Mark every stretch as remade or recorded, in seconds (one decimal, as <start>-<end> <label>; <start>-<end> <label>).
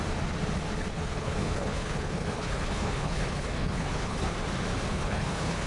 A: 0.0-0.9 recorded; 0.9-4.3 remade; 4.3-4.9 recorded; 4.9-5.7 remade